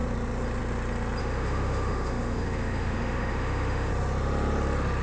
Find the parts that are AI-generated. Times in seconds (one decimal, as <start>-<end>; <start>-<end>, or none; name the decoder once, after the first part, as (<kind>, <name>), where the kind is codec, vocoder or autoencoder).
1.2-3.9 (autoencoder, DAC-VAE)